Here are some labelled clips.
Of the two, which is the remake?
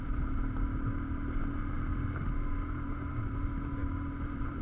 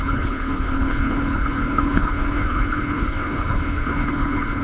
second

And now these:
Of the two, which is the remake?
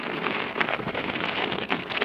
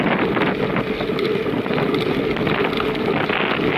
first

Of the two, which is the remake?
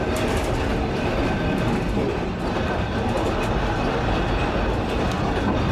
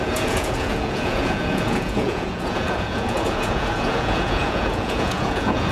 second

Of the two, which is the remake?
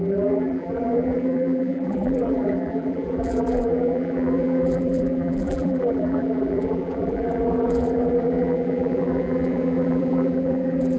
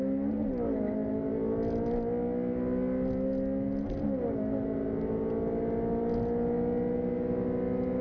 first